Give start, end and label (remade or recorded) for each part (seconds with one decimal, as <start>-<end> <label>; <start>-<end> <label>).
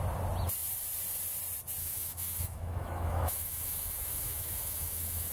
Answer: 0.0-1.8 recorded; 1.8-5.3 remade